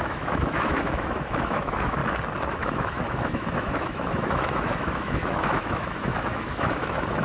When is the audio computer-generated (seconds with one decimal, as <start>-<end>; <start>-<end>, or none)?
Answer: 0.0-2.0; 2.5-7.2